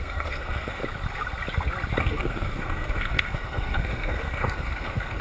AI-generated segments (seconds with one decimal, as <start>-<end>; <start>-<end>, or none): 0.0-0.8; 2.0-5.2